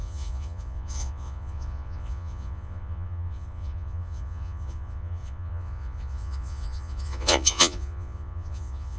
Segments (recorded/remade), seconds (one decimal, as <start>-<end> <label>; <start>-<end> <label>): 0.0-9.0 remade